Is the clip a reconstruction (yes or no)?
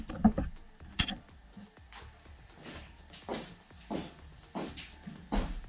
no